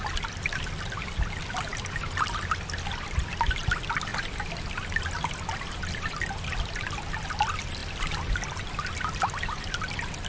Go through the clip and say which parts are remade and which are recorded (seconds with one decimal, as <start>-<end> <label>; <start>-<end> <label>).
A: 0.0-10.3 recorded